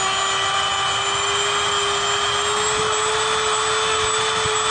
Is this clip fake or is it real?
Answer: real